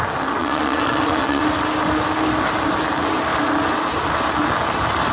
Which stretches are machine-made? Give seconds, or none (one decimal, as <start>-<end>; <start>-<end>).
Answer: 0.4-1.4